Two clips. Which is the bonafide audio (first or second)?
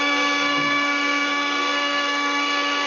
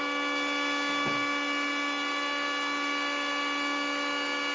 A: second